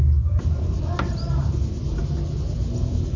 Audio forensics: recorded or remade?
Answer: recorded